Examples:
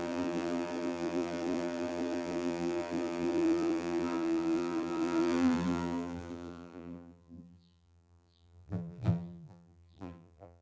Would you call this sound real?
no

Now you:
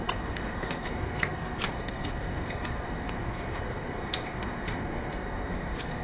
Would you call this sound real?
no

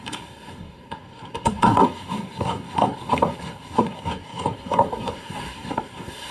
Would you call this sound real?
no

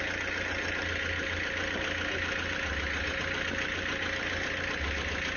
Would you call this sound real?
yes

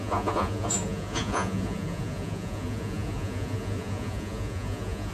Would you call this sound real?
no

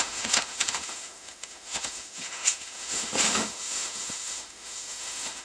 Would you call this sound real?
no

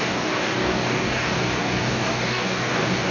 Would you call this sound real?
no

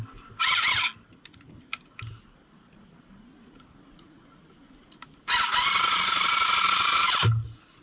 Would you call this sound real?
yes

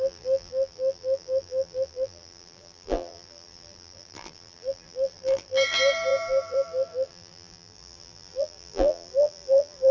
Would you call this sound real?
no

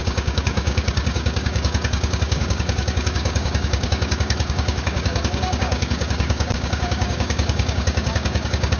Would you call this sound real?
no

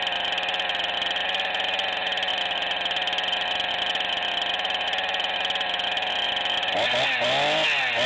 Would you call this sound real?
yes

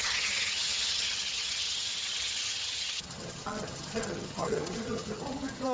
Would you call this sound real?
no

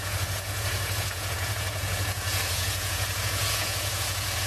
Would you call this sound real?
no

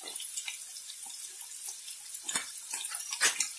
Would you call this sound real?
yes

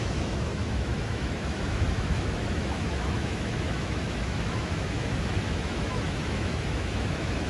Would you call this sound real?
no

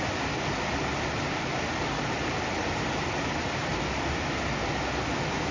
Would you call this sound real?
yes